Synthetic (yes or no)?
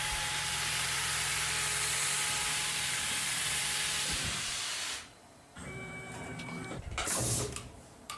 yes